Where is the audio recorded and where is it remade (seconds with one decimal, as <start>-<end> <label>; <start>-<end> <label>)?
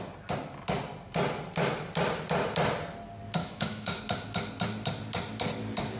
0.0-3.4 recorded; 3.4-4.0 remade; 4.0-6.0 recorded